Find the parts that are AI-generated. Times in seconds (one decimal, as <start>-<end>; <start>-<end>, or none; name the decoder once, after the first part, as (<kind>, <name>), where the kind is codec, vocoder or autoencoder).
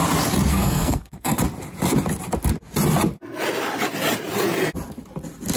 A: 0.5-1.4 (codec, SNAC)